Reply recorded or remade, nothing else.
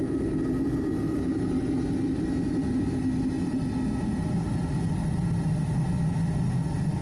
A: recorded